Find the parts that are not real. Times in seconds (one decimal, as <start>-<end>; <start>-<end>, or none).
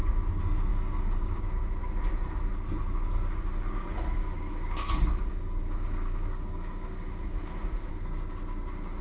0.7-1.4; 3.1-7.9